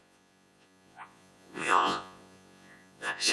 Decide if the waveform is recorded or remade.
remade